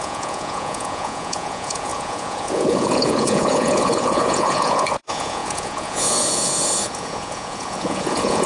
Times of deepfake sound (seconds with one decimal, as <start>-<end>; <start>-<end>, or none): 0.0-8.5